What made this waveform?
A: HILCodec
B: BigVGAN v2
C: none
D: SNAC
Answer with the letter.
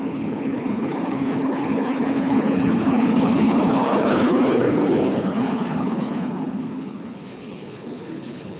A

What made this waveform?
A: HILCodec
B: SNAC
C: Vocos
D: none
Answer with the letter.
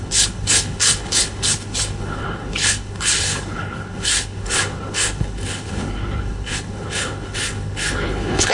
A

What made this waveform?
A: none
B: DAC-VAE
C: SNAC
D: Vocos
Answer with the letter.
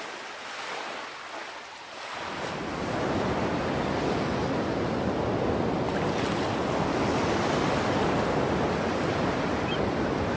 A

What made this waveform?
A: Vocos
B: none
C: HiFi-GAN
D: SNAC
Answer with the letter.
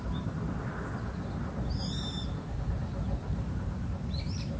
B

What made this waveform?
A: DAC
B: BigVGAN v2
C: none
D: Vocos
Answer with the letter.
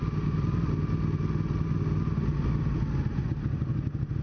C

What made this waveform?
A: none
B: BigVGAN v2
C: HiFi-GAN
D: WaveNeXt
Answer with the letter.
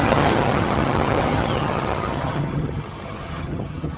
C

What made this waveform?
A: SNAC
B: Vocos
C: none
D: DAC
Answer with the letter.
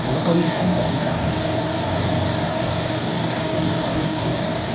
D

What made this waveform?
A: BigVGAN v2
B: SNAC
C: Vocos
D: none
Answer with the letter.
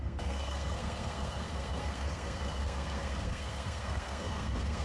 B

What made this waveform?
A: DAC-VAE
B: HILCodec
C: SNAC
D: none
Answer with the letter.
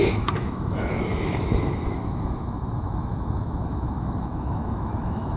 A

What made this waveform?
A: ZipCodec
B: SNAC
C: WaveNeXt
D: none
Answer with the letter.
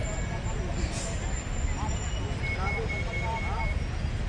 D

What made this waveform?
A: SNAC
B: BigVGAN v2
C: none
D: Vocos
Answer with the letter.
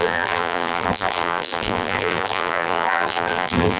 B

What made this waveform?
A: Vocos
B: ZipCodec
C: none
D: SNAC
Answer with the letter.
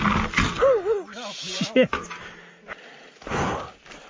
C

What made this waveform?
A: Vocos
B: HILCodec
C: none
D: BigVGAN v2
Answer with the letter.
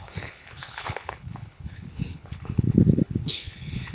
B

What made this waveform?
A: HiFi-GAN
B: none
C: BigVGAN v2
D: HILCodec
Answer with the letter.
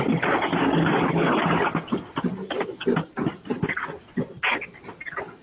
B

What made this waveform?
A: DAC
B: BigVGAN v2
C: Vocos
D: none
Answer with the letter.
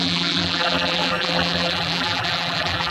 B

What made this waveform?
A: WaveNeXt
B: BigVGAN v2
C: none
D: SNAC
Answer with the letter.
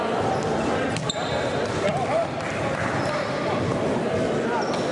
C